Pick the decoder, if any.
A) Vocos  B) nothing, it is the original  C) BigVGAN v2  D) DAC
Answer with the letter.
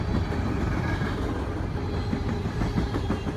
B